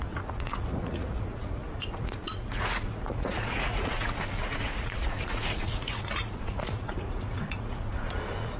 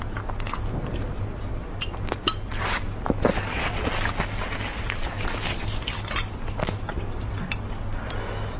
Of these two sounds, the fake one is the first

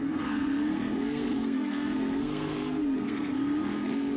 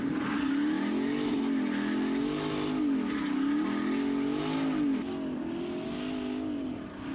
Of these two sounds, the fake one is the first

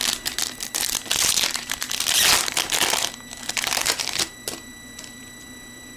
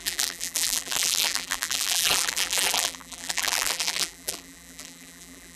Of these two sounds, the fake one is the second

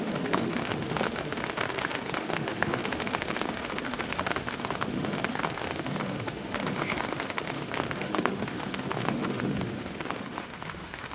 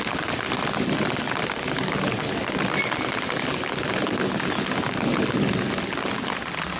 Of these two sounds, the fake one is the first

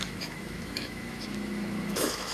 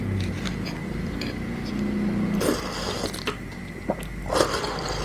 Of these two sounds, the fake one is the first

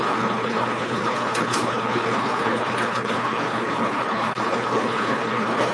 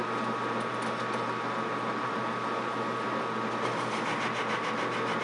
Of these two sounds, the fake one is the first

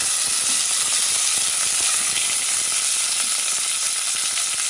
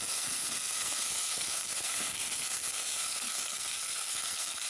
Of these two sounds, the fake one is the second